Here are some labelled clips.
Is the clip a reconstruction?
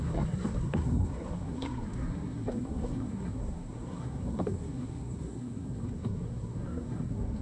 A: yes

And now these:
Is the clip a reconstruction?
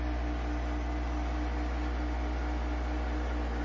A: no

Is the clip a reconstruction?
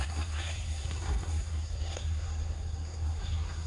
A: yes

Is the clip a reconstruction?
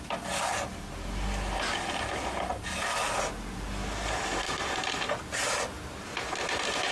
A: no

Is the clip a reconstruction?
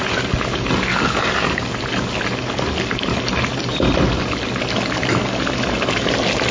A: no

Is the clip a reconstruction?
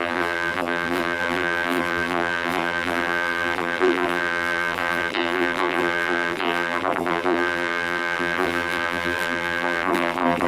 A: yes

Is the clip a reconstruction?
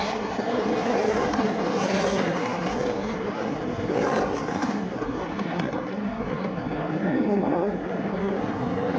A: yes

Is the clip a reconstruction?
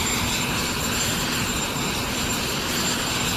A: yes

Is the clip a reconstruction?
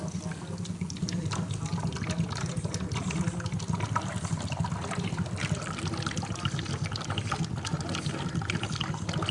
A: no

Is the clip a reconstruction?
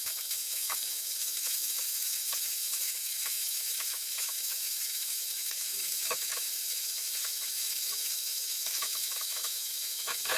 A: yes